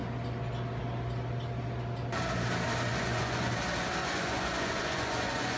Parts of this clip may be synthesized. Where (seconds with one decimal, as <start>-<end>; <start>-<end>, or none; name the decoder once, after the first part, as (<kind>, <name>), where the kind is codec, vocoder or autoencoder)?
2.9-3.5 (vocoder, Vocos); 4.0-5.6

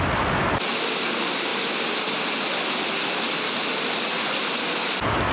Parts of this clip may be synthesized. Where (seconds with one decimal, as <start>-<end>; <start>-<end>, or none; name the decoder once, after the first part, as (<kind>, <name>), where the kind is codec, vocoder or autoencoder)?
none

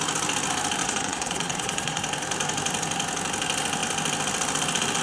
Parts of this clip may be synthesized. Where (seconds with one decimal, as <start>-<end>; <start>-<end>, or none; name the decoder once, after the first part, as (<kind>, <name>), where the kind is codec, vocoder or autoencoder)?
0.8-2.0 (vocoder, Vocos)

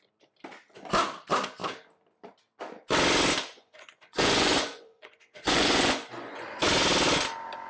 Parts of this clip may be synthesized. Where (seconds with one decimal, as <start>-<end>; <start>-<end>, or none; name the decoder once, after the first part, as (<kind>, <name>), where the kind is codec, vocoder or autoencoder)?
3.5-6.6 (vocoder, Vocos)